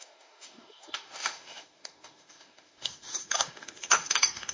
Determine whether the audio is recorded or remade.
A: remade